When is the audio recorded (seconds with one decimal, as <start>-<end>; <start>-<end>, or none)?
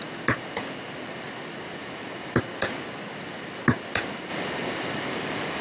0.0-1.8; 2.4-4.3